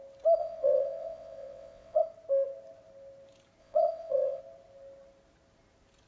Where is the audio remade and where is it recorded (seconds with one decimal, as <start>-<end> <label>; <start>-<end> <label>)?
0.0-0.4 recorded; 0.4-2.0 remade; 2.0-3.6 recorded; 3.6-4.4 remade; 4.4-6.1 recorded